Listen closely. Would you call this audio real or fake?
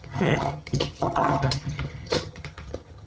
fake